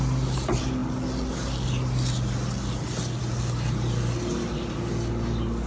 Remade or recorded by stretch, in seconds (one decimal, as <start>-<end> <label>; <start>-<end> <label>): 0.0-5.7 recorded